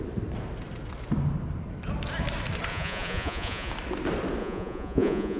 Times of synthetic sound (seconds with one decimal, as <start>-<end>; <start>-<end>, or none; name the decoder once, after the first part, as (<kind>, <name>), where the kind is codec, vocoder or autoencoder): 2.7-3.7 (vocoder, Vocos); 4.4-5.4